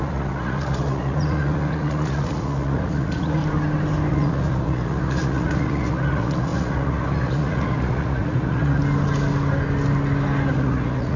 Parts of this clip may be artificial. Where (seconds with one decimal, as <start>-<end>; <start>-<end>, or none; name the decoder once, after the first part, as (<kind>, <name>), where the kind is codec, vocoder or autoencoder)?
0.0-3.4 (vocoder, Vocos); 4.1-8.8; 10.5-11.2

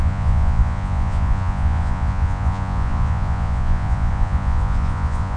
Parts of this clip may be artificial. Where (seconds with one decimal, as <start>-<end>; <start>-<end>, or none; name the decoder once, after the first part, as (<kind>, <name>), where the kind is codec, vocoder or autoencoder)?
0.0-5.4 (vocoder, Vocos)

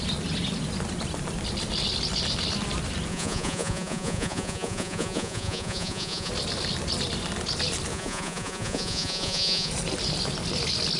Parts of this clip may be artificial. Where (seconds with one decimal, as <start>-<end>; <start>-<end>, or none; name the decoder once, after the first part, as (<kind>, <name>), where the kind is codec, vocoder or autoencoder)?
3.1-6.3 (vocoder, Vocos); 7.9-9.7

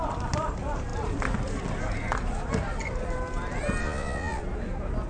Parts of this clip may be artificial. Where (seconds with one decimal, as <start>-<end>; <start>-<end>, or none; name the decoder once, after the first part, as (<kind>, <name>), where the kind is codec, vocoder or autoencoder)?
3.8-4.4 (vocoder, Vocos)

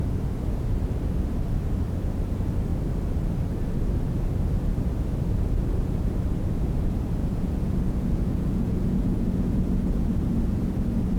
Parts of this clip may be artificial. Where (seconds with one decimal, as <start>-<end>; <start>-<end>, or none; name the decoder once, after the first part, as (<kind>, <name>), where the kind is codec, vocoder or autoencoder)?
7.2-10.1 (vocoder, Vocos)

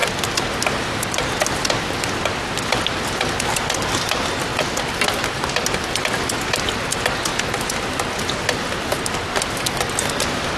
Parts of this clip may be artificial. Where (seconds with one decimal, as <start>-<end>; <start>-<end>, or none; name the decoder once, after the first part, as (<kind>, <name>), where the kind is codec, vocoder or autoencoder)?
none